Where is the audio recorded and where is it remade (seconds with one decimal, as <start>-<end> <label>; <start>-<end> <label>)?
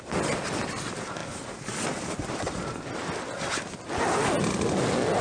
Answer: 0.0-5.2 recorded